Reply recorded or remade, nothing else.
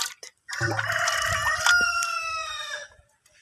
recorded